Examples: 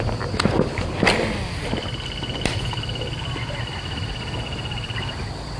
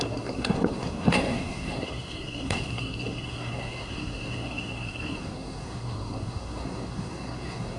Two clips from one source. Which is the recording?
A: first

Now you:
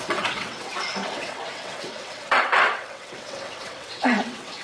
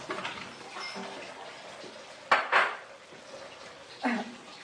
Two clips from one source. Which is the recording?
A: second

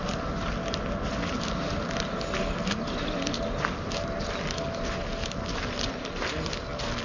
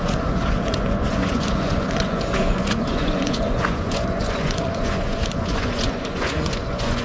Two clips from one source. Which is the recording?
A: first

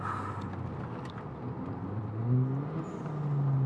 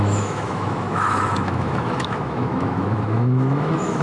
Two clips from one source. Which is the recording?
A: first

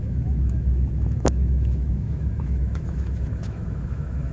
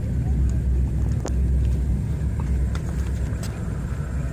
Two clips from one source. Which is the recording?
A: second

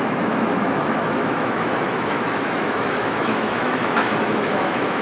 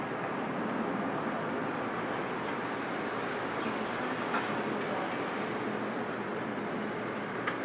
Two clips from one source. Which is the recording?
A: second